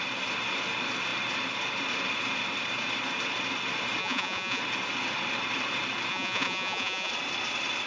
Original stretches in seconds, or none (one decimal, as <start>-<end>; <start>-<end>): 0.0-4.0; 4.6-6.1; 7.1-7.9